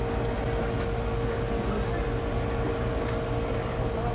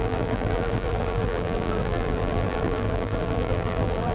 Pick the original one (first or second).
first